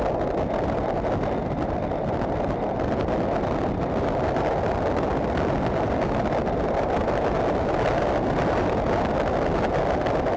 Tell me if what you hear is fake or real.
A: real